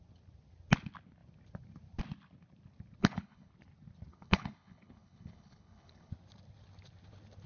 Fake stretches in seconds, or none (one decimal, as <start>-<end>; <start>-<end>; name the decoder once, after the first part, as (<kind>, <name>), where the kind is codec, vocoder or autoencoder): 3.0-3.5 (codec, HILCodec); 4.1-6.1